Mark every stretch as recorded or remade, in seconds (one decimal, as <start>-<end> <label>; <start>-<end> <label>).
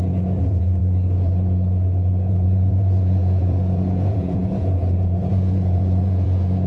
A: 0.0-0.8 remade; 0.8-2.3 recorded; 2.3-6.7 remade